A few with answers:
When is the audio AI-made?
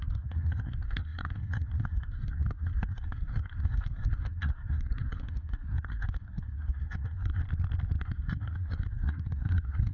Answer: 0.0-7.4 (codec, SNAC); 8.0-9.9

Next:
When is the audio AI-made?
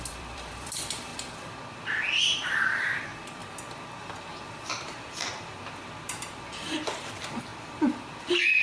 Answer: 0.0-1.1 (vocoder, BigVGAN v2); 1.8-3.4; 4.5-8.6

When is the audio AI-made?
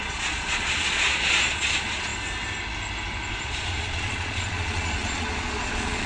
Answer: 0.0-2.1 (vocoder, Vocos); 3.4-6.1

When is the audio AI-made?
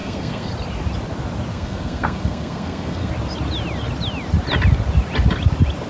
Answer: 0.0-0.5 (codec, SNAC); 1.5-3.1